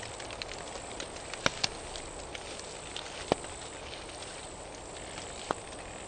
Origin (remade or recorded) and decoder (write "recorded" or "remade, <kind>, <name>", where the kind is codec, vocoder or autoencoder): recorded